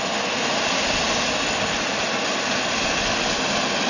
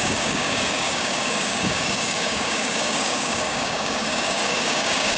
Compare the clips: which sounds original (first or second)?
first